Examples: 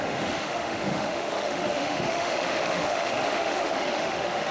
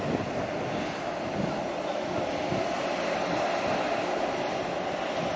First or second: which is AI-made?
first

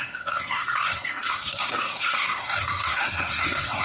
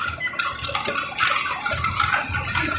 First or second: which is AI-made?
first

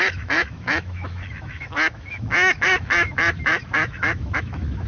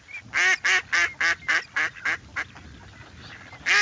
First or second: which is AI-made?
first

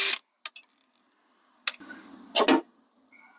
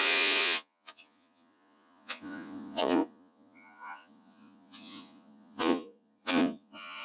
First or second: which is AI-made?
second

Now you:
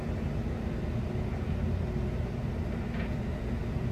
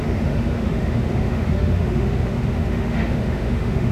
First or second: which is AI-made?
second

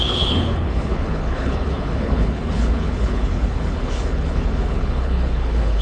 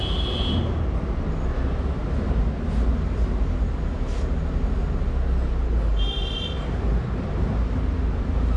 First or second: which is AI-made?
first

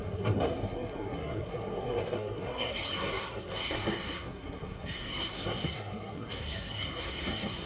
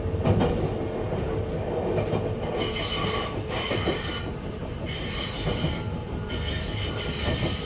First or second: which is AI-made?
first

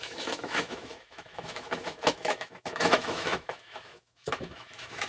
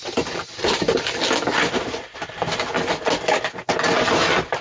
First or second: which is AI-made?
first